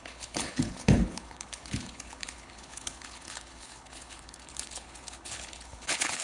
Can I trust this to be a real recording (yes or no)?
no